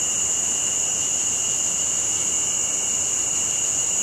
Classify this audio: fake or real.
real